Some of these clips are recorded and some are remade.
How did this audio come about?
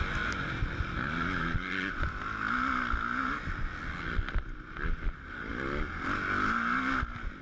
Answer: recorded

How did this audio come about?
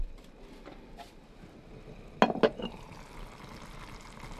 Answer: recorded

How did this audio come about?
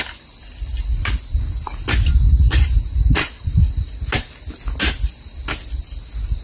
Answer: recorded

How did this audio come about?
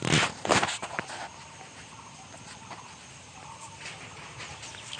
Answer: recorded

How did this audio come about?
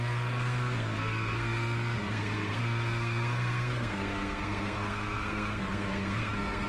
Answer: remade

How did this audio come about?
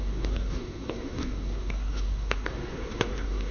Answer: remade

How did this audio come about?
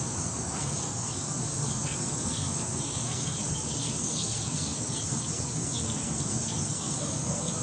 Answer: remade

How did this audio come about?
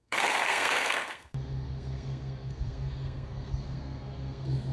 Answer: remade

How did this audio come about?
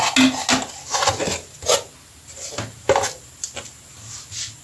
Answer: recorded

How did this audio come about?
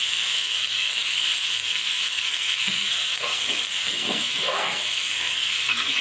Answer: remade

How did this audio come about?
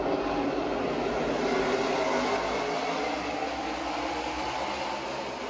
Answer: recorded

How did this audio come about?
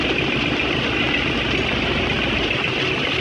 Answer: recorded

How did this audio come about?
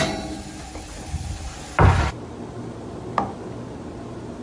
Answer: recorded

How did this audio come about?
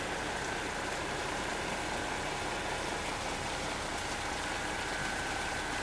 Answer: recorded